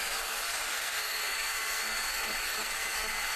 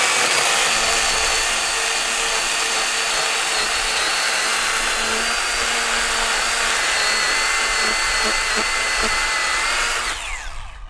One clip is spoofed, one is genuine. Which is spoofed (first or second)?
first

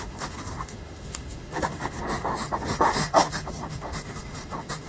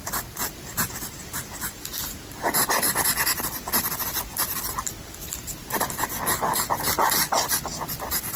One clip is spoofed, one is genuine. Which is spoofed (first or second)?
first